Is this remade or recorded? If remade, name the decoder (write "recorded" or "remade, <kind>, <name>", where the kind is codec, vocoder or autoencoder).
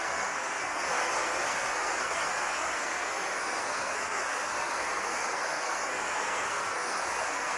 remade, codec, SNAC